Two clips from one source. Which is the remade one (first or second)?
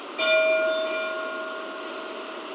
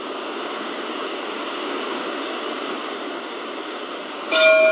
second